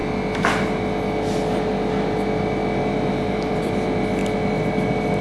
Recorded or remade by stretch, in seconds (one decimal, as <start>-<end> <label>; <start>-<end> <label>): 0.0-3.1 recorded; 3.1-4.2 remade; 4.2-5.2 recorded

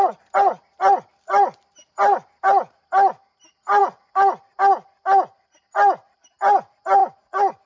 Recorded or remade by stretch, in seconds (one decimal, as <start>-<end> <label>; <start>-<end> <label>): 0.0-3.8 recorded; 3.8-4.4 remade; 4.4-7.0 recorded; 7.0-7.7 remade